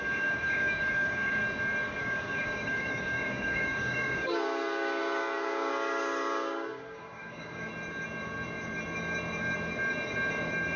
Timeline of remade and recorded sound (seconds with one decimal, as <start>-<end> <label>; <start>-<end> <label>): 0.0-1.4 remade; 1.4-2.0 recorded; 2.0-7.7 remade; 7.7-10.8 recorded